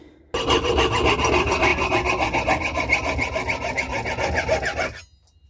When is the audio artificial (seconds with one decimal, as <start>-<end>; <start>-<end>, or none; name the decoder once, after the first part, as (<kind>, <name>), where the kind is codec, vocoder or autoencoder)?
none